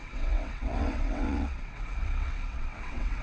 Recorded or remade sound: remade